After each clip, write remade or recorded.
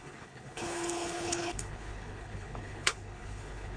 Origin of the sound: remade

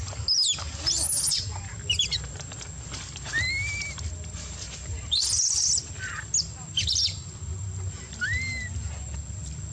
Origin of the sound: recorded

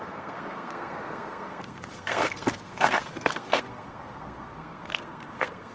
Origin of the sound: remade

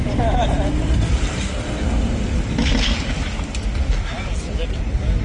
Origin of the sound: recorded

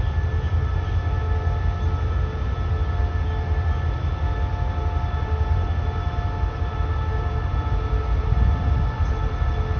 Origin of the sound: recorded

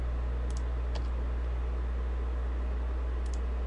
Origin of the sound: recorded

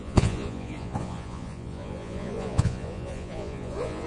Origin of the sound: remade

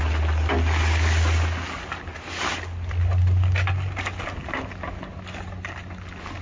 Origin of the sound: recorded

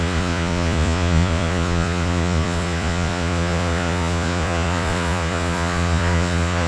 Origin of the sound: remade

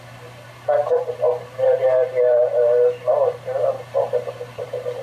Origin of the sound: remade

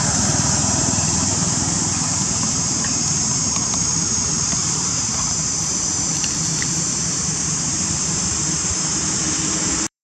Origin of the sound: remade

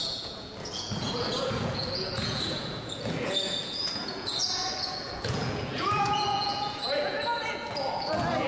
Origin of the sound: remade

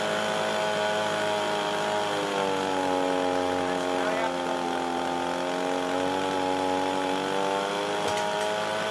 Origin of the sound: recorded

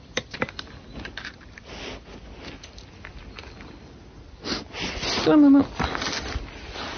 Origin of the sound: recorded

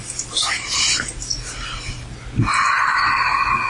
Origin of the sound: recorded